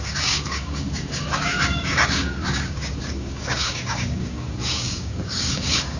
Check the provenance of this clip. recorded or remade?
remade